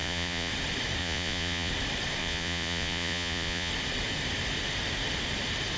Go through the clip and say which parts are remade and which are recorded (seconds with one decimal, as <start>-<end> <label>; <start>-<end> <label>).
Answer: 0.0-0.5 remade; 0.5-1.0 recorded; 1.0-1.7 remade; 1.7-2.2 recorded; 2.2-3.7 remade; 3.7-5.8 recorded